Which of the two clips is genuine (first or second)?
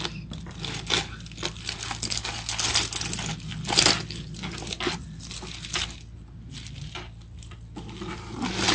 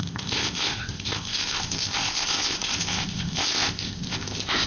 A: first